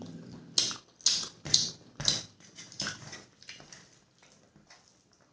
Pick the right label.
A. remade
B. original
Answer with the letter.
B